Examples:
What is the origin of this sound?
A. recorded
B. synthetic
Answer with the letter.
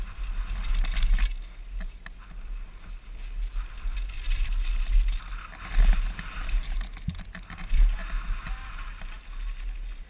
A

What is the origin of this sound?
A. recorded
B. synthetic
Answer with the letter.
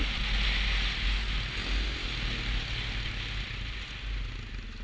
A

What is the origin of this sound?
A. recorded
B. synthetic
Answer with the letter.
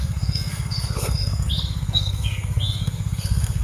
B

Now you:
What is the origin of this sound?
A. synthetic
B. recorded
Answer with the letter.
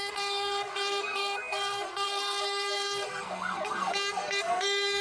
A